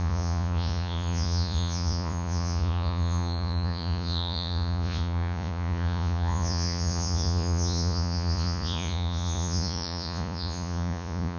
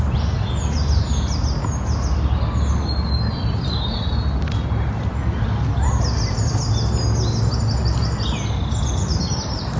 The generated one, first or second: first